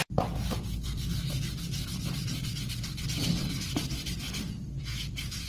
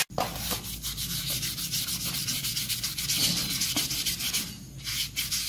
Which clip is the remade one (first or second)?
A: first